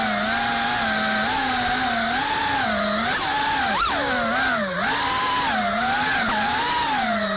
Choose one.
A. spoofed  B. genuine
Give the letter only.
B